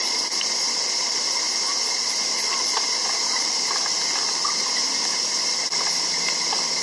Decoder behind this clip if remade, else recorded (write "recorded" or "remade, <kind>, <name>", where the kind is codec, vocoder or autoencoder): recorded